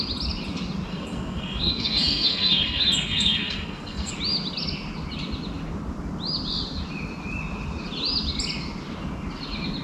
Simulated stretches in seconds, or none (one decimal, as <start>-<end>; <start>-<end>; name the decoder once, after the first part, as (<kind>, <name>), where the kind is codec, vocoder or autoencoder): 0.9-4.1 (codec, SNAC)

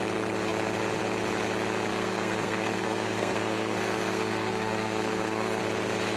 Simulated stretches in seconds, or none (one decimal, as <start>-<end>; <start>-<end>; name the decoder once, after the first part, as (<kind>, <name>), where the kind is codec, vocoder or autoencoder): 1.9-5.6 (codec, SNAC)

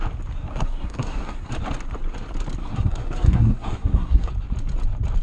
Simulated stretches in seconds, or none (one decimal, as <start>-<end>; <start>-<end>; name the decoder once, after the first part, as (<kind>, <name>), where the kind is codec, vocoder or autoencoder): 0.5-1.5 (codec, SNAC); 2.6-4.3

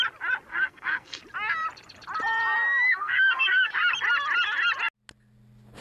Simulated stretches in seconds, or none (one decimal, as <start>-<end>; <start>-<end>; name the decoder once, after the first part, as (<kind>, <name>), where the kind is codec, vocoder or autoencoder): 0.5-1.2 (codec, SNAC); 2.9-3.7

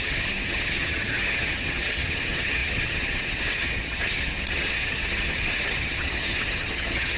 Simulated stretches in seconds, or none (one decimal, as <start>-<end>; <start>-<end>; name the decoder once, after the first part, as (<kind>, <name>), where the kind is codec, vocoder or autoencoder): 0.0-7.2 (vocoder, HiFi-GAN)

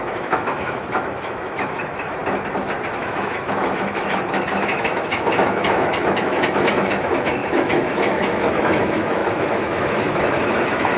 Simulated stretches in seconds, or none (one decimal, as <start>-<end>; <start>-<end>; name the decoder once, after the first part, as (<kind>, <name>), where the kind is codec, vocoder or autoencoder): 0.0-2.2 (autoencoder, DAC-VAE); 3.0-11.0

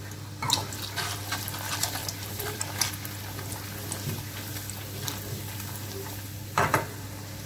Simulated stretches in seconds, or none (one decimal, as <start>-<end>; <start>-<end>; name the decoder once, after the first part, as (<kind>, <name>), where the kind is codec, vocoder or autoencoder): 2.0-2.9 (vocoder, BigVGAN v2)

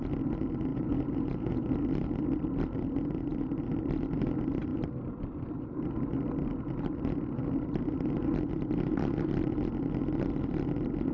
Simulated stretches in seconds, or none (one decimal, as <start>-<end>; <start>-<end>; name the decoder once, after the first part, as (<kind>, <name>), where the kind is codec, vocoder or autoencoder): 0.7-1.7 (vocoder, Vocos)